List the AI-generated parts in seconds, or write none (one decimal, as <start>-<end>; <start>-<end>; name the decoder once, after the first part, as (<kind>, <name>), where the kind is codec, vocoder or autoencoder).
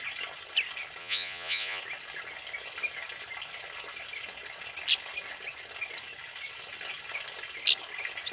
1.0-1.8 (vocoder, Vocos)